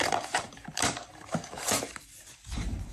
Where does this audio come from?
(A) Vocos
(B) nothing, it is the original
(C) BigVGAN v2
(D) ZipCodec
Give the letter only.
C